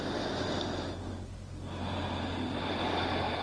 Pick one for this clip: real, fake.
real